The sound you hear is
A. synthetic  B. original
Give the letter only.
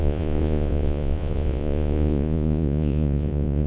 A